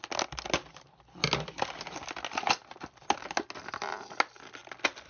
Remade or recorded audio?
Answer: recorded